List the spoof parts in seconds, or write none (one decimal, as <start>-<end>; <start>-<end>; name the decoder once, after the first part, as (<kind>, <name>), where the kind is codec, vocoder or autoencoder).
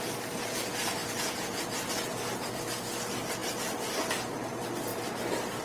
1.0-1.9 (vocoder, Vocos)